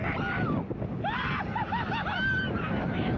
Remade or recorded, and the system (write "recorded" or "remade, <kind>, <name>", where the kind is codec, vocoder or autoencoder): recorded